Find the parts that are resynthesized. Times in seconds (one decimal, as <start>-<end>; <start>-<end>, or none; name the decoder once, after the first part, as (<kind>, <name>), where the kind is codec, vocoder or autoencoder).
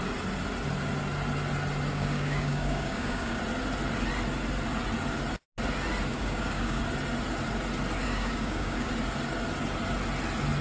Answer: 1.9-3.4 (codec, DAC); 6.1-6.8; 8.0-8.9